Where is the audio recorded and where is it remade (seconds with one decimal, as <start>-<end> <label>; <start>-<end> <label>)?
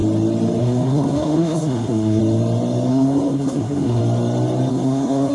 0.0-0.6 recorded; 0.6-2.2 remade; 2.2-2.9 recorded; 2.9-4.0 remade; 4.0-4.7 recorded; 4.7-5.3 remade